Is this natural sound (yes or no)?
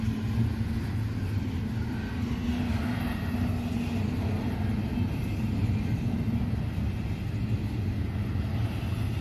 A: yes